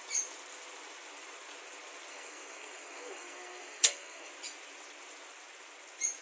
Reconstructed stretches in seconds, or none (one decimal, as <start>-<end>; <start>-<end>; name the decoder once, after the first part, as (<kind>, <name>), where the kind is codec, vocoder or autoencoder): 2.1-4.3 (codec, SNAC)